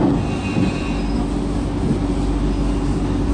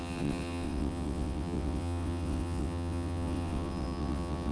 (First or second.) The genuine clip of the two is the first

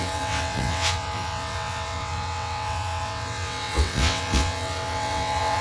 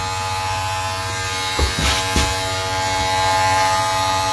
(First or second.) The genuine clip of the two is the second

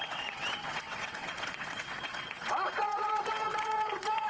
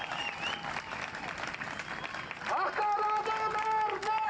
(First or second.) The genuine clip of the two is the second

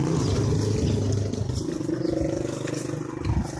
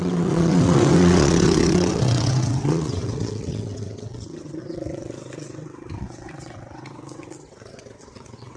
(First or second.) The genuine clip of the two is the first